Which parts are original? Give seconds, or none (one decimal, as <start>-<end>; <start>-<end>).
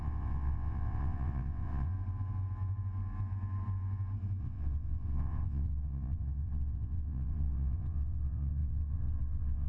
1.9-4.4